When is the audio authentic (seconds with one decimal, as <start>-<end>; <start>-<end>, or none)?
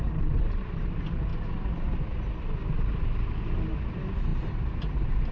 1.3-3.8